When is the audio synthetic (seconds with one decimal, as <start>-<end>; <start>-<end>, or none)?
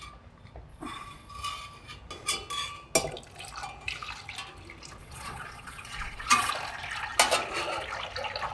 0.7-1.3; 5.0-6.5